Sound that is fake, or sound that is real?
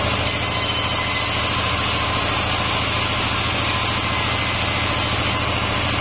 real